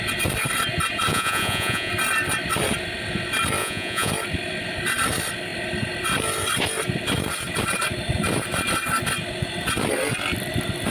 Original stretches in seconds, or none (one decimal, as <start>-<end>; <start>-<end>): 0.0-1.1; 1.9-3.6; 4.1-10.9